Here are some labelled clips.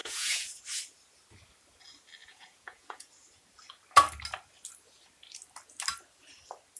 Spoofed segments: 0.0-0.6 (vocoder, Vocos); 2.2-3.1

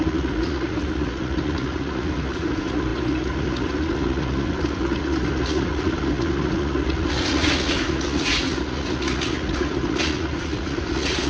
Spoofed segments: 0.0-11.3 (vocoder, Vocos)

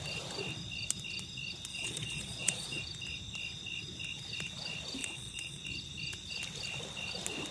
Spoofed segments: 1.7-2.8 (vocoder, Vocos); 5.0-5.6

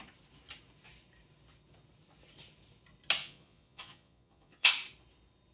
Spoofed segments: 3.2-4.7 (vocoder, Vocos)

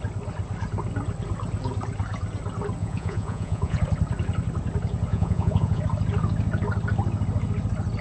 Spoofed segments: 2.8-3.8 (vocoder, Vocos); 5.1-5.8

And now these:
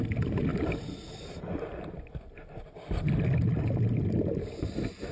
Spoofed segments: none